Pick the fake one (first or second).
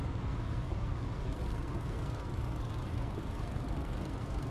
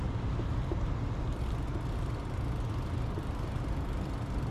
first